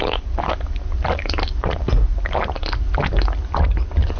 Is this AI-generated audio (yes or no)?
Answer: no